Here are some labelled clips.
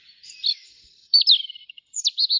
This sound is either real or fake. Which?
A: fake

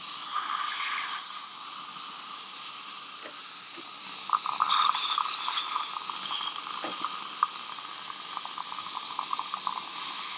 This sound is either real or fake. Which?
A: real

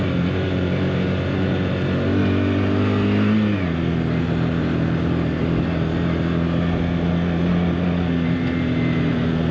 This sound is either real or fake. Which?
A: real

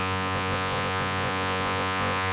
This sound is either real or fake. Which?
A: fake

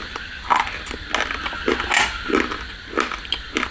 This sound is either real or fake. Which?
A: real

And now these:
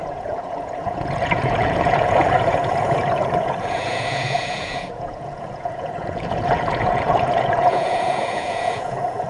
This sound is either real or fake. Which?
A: fake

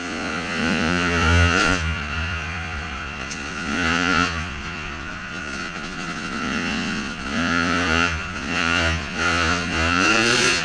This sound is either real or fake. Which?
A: fake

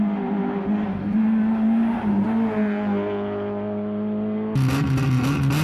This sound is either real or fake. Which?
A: real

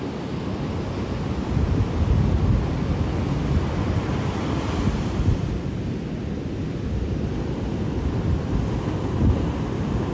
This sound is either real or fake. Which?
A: real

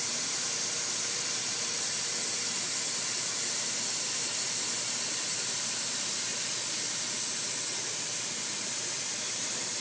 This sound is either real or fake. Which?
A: fake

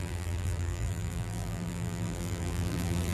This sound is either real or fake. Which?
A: fake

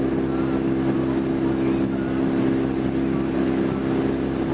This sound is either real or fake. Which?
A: real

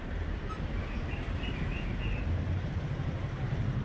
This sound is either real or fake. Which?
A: fake